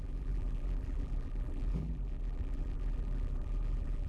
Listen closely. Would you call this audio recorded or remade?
remade